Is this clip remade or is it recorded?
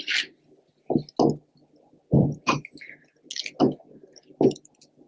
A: recorded